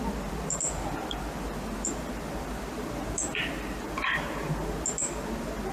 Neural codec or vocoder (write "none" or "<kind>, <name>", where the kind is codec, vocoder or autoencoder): none